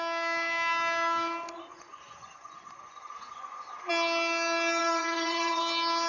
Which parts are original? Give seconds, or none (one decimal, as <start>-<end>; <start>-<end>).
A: 0.0-1.7; 3.9-4.8; 5.6-6.1